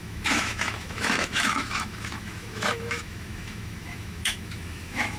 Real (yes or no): no